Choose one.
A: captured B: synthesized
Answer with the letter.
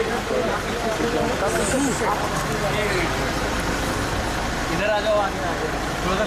A